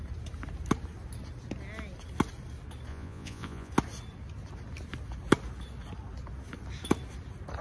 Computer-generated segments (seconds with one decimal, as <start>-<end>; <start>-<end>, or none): 2.9-3.7

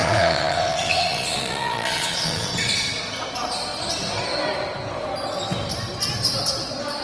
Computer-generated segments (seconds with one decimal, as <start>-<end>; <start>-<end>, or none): 0.0-2.5